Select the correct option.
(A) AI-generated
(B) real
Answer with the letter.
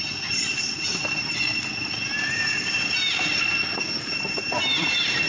B